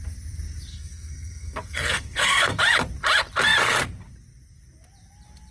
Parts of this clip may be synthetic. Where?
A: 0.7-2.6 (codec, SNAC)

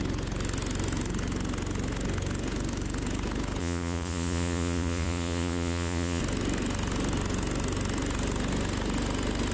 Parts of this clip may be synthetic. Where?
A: 3.6-6.2 (vocoder, Vocos)

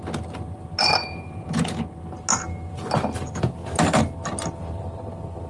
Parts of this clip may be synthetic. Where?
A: 1.0-1.8 (vocoder, Vocos)

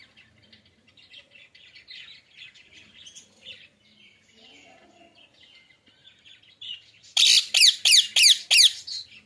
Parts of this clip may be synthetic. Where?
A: none

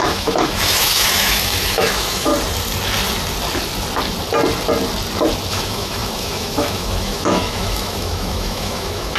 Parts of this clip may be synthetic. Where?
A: 0.0-2.3 (autoencoder, DAC-VAE); 5.5-9.2